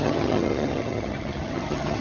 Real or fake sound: fake